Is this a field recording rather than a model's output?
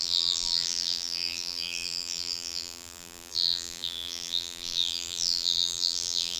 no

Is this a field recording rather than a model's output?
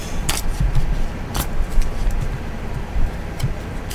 no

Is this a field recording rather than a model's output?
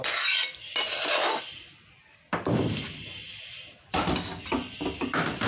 yes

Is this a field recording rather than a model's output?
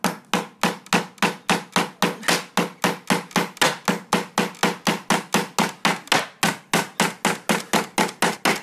yes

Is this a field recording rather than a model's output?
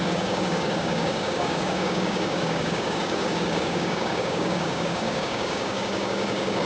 no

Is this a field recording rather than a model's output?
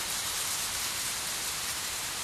no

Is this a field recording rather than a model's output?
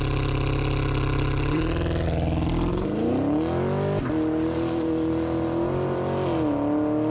yes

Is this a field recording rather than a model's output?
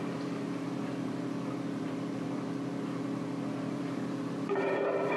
no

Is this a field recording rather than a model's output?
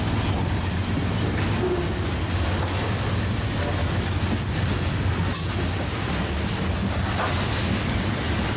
yes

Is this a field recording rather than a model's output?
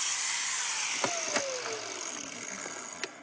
yes